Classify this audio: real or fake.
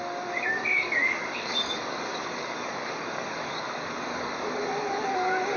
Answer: fake